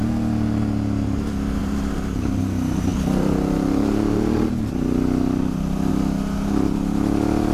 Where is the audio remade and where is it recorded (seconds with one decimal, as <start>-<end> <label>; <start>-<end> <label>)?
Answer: 0.0-1.6 recorded; 1.6-2.4 remade; 2.4-7.5 recorded